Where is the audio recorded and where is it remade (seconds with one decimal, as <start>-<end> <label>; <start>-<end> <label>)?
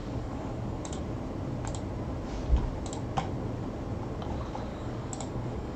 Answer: 0.0-1.0 remade; 1.0-4.7 recorded; 4.7-5.8 remade